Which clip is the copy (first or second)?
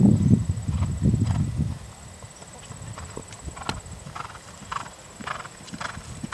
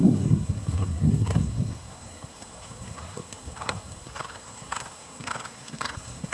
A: second